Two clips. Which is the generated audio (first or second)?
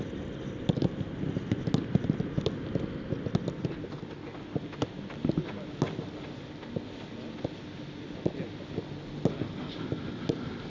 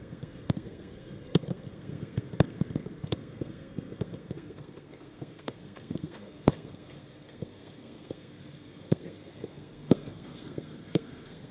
second